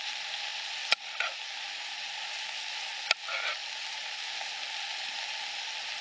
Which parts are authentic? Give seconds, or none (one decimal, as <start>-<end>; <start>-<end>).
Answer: 0.0-6.0

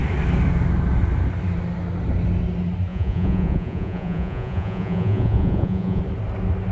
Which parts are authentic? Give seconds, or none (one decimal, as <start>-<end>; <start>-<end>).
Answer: 0.0-2.9; 6.0-6.7

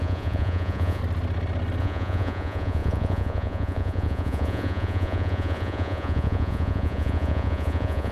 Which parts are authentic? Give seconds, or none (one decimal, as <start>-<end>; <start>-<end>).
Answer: 1.0-1.8

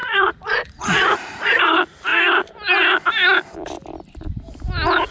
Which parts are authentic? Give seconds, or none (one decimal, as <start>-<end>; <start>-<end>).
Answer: 1.5-5.1

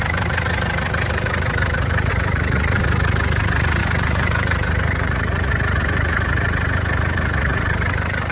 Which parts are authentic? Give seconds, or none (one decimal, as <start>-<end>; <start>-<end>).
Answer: none